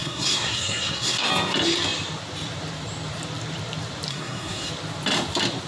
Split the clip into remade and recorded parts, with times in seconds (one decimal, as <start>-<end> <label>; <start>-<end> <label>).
0.0-1.3 remade; 1.3-4.1 recorded; 4.1-4.7 remade; 4.7-5.7 recorded